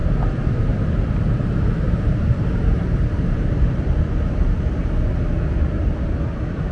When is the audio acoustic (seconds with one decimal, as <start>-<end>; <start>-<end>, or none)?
4.0-6.7